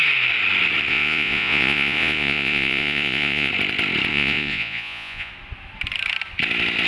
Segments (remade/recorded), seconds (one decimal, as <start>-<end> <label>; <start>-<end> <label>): 0.0-0.9 recorded; 0.9-3.5 remade; 3.5-4.1 recorded; 4.1-5.3 remade; 5.3-6.9 recorded